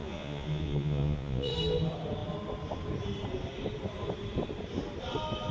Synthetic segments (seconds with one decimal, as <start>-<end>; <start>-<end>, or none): 0.0-1.5